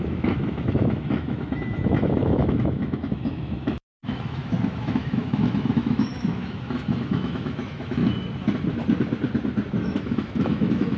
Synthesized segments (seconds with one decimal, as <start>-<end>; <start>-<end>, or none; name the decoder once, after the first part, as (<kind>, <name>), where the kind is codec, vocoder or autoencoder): 0.0-8.0 (autoencoder, DAC-VAE); 9.7-11.0